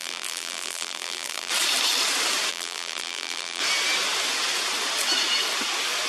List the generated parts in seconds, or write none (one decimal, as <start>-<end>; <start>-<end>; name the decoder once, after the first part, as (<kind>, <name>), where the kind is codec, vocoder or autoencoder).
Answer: 0.0-1.5 (vocoder, BigVGAN v2); 2.5-3.6